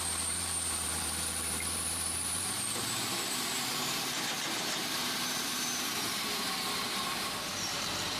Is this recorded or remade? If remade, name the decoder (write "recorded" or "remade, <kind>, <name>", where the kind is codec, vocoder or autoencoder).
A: remade, vocoder, BigVGAN v2